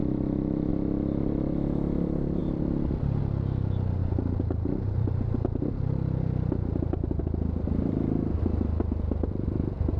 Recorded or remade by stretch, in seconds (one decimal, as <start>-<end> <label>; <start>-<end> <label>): 0.0-0.7 remade; 0.7-2.4 recorded; 2.4-3.2 remade; 3.2-4.0 recorded; 4.0-7.2 remade; 7.2-10.0 recorded